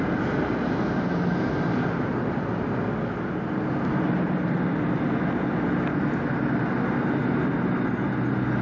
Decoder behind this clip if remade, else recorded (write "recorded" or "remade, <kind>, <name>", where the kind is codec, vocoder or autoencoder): recorded